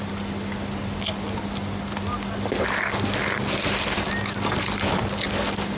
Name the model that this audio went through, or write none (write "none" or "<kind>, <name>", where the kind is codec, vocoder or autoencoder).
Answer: none